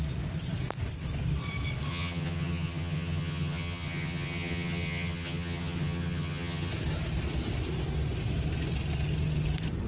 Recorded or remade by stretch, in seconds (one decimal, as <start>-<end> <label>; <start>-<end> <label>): 0.0-1.9 recorded; 1.9-6.7 remade; 6.7-9.9 recorded

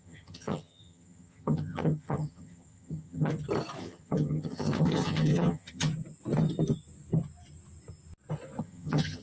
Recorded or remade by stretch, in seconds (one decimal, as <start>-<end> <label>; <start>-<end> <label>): 0.0-3.3 remade; 3.3-3.8 recorded; 3.8-5.9 remade; 5.9-8.6 recorded; 8.6-9.2 remade